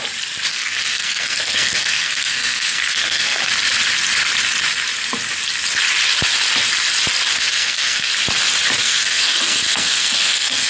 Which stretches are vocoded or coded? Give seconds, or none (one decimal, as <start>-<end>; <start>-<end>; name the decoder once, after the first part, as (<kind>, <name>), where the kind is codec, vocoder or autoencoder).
0.5-3.4 (codec, SNAC); 7.3-8.1; 8.8-10.7